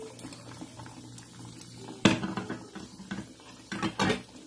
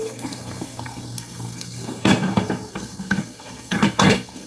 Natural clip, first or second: first